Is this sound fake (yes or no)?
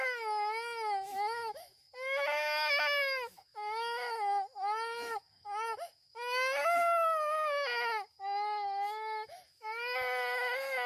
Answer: yes